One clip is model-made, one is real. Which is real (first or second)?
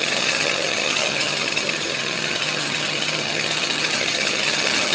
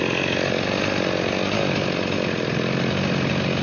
second